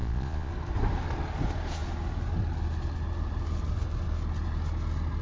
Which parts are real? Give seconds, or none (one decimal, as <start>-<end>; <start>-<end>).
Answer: 0.5-5.2